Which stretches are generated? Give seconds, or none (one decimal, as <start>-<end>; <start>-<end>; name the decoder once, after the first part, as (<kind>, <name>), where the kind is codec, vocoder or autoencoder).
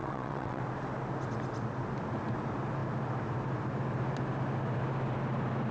0.0-0.6 (vocoder, WaveNeXt)